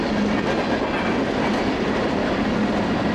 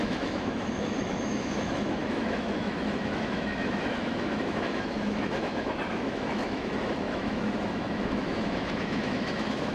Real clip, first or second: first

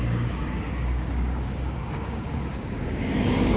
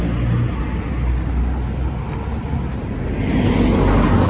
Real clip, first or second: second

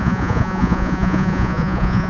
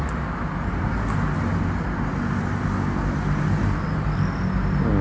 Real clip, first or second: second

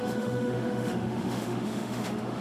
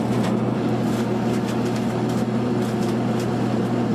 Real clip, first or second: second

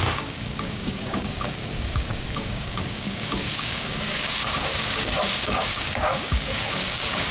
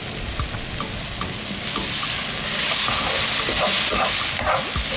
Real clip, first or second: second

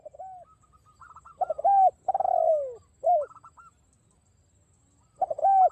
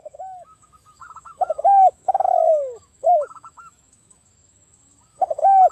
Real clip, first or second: first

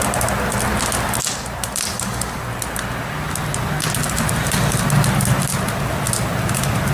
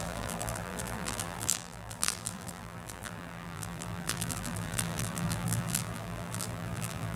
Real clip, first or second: first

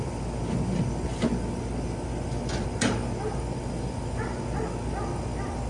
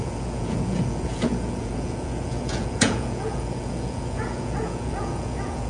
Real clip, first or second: first